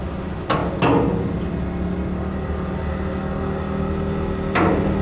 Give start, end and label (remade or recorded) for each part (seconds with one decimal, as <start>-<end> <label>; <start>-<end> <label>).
0.0-5.0 recorded